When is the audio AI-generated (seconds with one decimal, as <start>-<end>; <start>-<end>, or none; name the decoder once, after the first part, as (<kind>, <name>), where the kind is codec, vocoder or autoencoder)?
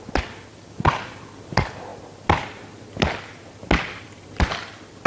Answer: 0.0-1.9 (vocoder, BigVGAN v2); 4.0-5.1